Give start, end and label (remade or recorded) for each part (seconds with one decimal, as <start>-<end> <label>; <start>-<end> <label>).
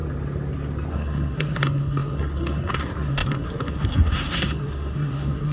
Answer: 0.0-0.9 recorded; 0.9-5.5 remade